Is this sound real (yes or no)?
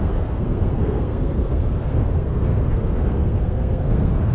no